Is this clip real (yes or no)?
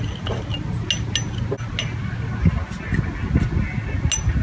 yes